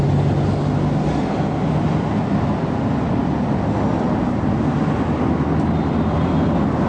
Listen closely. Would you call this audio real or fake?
real